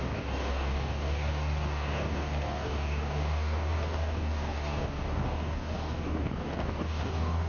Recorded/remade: remade